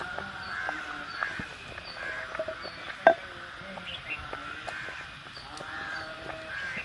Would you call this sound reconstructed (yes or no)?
no